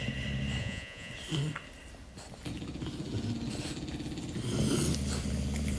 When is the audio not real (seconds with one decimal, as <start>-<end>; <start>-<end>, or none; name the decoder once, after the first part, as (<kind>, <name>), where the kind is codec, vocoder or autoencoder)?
0.6-1.1 (vocoder, Vocos)